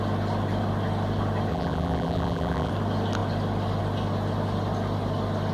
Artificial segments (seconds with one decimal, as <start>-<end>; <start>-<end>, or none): 1.5-2.7